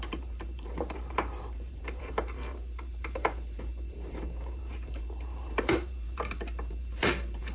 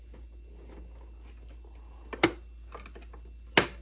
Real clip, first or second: second